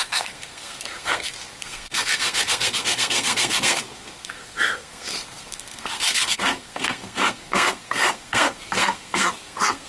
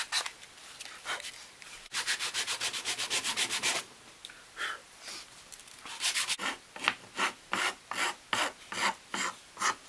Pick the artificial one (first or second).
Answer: first